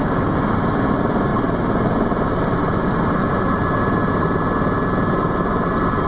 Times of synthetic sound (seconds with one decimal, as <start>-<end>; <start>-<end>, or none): 1.3-4.1; 5.2-6.1